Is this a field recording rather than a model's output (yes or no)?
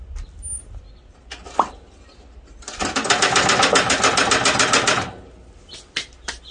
yes